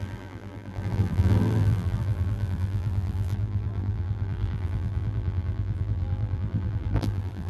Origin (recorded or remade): remade